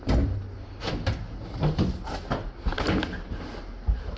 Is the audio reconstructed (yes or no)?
no